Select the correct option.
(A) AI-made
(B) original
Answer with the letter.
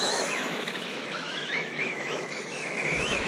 A